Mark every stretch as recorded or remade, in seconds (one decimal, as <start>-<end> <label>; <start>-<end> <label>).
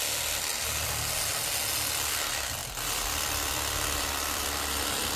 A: 0.0-2.6 recorded; 2.6-4.4 remade; 4.4-5.2 recorded